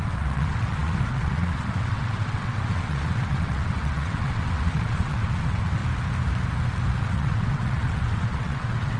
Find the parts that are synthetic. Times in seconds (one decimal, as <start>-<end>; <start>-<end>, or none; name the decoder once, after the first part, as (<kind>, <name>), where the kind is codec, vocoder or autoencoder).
0.0-5.8 (vocoder, WaveNeXt); 7.0-9.0